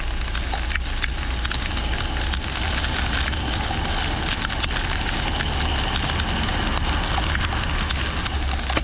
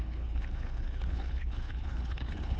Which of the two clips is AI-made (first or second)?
second